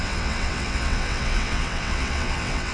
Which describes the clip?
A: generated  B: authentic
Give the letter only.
A